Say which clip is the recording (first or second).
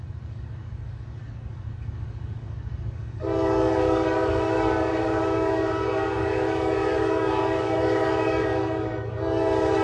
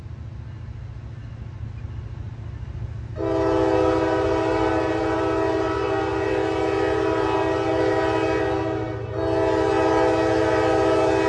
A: second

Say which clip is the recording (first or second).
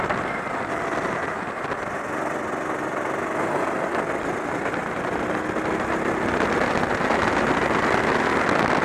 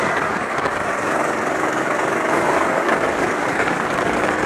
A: first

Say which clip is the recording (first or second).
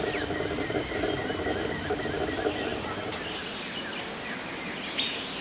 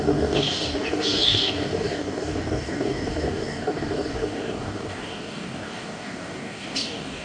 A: first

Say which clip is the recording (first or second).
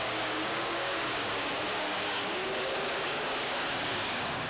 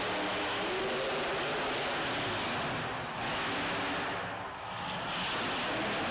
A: second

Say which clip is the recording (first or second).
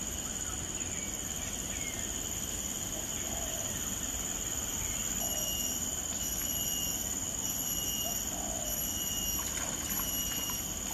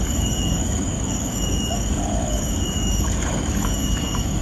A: first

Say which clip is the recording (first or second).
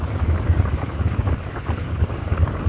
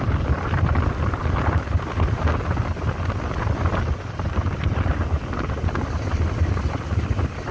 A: second